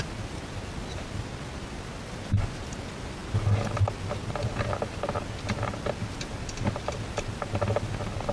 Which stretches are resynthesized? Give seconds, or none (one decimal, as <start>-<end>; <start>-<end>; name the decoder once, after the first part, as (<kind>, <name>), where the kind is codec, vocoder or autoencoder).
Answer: none